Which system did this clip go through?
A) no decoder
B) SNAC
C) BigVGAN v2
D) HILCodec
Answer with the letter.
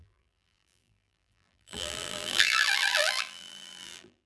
C